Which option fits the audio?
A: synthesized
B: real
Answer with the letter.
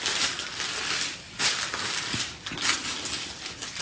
B